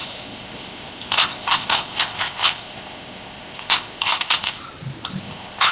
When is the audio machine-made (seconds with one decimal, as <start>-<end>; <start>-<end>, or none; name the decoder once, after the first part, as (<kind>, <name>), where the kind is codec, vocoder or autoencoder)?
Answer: 0.0-4.6 (codec, ZipCodec); 5.2-5.7